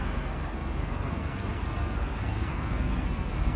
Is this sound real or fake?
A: fake